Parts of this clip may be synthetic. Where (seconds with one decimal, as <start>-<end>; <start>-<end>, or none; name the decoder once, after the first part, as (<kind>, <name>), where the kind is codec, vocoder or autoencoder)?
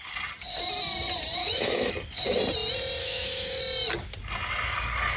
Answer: 1.4-1.9 (autoencoder, DAC-VAE); 3.0-3.6